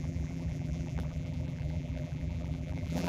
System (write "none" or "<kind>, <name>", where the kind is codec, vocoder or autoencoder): vocoder, BigVGAN v2